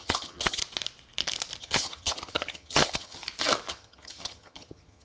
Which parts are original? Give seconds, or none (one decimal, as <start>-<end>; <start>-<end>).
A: 0.6-1.6; 3.2-3.7